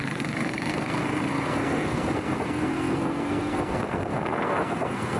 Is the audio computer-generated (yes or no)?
yes